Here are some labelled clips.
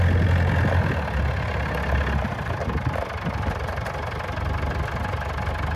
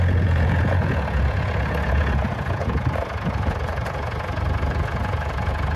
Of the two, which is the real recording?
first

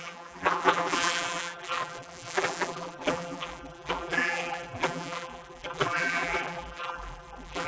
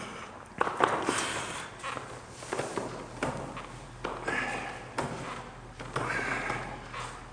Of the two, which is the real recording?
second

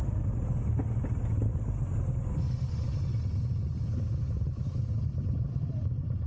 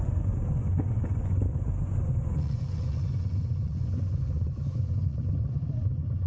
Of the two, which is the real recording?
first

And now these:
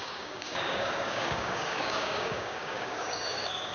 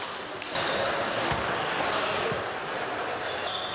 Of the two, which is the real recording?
second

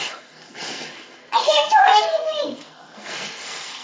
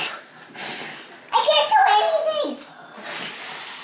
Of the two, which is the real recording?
second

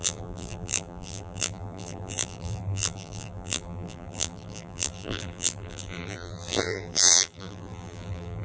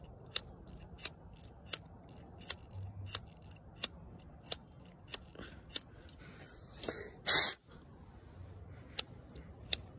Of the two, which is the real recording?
second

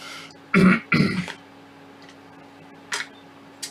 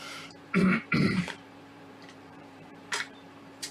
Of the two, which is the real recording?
first